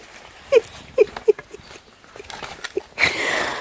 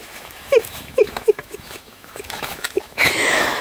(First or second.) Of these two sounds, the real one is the first